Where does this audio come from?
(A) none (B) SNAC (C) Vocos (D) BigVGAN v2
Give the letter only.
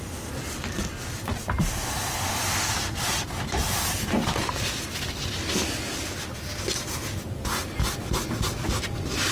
A